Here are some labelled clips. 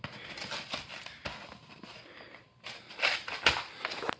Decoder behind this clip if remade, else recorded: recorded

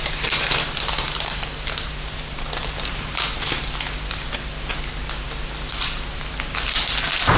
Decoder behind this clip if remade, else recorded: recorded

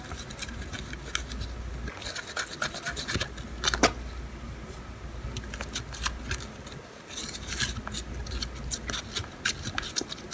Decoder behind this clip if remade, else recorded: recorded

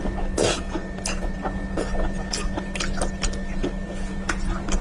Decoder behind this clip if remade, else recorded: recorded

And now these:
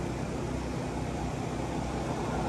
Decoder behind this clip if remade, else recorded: recorded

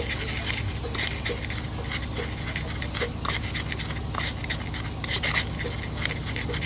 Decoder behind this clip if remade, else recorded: recorded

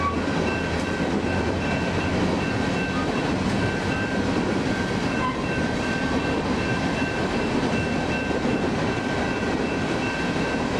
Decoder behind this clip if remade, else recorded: remade, vocoder, BigVGAN v2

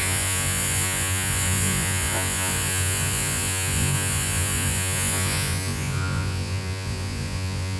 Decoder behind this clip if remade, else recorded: remade, vocoder, Vocos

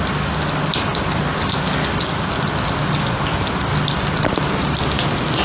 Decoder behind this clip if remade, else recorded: recorded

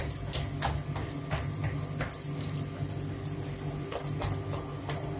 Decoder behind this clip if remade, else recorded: recorded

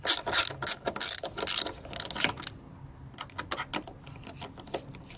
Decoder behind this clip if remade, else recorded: recorded